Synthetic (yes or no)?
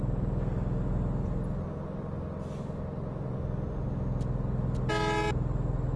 no